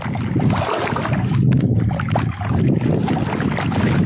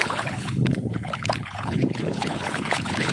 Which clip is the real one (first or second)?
first